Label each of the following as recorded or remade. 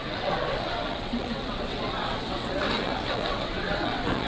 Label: remade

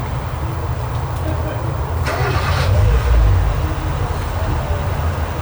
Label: remade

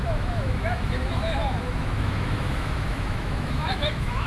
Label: remade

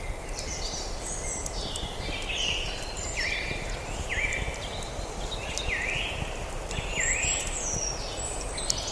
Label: recorded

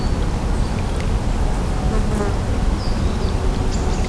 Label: recorded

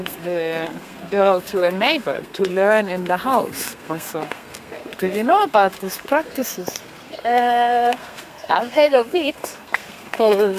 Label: remade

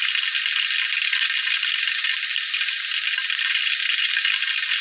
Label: recorded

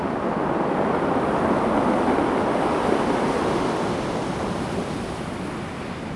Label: recorded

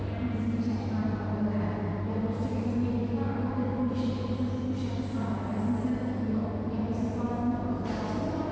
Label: recorded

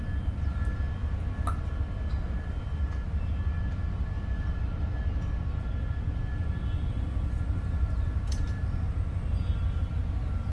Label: recorded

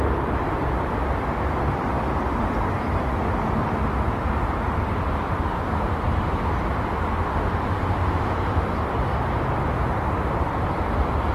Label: remade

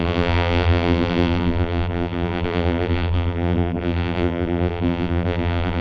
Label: remade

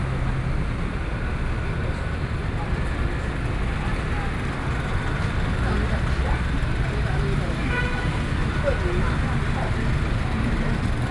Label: recorded